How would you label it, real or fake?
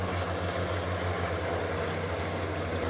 real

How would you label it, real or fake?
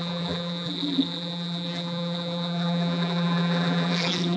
fake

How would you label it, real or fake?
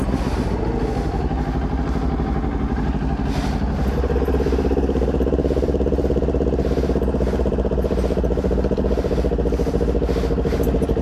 real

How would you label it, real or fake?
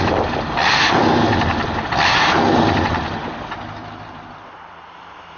fake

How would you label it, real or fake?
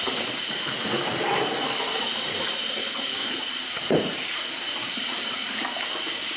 fake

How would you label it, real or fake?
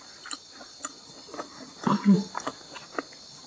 real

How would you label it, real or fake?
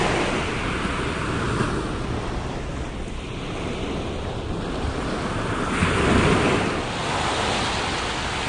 real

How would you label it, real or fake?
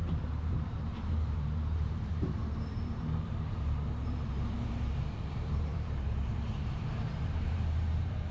fake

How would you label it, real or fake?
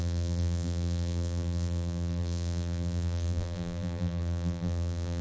fake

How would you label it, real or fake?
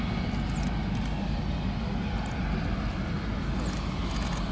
real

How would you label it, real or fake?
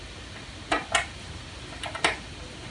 real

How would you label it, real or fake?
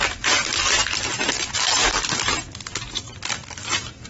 fake